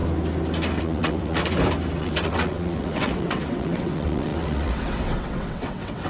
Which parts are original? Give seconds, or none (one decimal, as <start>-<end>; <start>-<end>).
0.0-0.8; 1.4-2.0